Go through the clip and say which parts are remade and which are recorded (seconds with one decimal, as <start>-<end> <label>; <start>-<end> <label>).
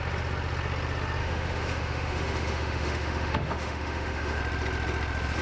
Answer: 0.0-1.2 recorded; 1.2-4.4 remade; 4.4-5.4 recorded